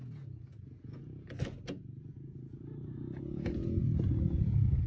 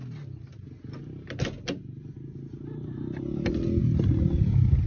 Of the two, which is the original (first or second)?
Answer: second